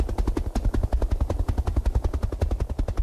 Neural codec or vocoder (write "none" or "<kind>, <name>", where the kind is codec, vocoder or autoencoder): none